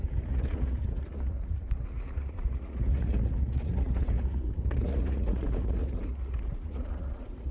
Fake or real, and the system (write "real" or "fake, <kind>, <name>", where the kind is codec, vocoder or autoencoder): fake, vocoder, Vocos